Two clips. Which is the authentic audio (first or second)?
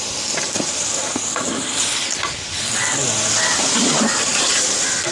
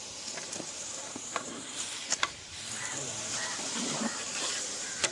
first